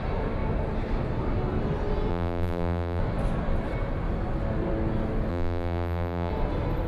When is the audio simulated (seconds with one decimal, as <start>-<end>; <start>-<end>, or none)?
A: 2.1-3.0; 5.3-6.3

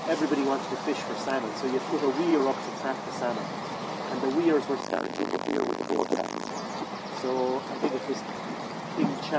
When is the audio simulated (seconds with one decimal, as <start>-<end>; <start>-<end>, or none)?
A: 4.8-6.5

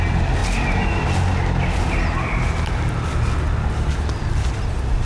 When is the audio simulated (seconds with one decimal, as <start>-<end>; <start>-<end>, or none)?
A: none